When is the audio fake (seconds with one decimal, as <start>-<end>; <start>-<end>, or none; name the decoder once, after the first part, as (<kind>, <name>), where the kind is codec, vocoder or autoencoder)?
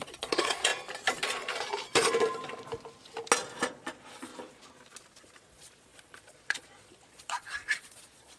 0.0-0.7 (vocoder, Vocos); 3.6-4.3; 5.2-8.4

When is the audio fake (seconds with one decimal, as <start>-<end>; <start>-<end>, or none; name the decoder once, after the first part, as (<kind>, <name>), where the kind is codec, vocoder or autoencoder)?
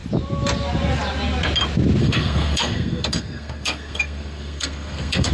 2.0-5.3 (codec, SNAC)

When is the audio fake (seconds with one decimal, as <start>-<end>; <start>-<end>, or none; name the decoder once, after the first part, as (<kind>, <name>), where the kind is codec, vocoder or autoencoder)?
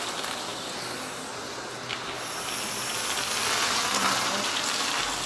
none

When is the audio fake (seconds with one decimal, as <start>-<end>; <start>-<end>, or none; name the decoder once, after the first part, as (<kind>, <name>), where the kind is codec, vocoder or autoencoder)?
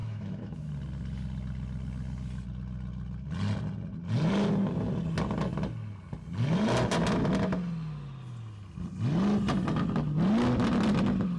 0.0-0.7 (autoencoder, DAC-VAE)